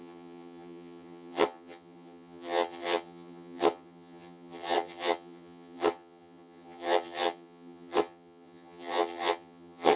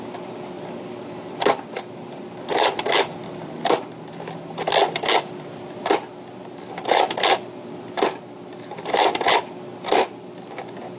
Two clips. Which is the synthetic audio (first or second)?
first